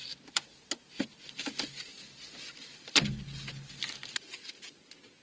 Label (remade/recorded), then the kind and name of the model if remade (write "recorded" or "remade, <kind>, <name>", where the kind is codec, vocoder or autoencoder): recorded